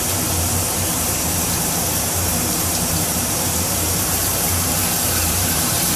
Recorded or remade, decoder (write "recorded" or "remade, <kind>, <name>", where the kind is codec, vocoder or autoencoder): remade, vocoder, BigVGAN v2